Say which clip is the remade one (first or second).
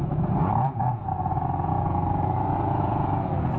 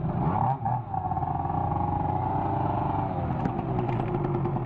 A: first